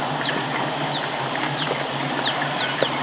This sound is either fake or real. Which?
real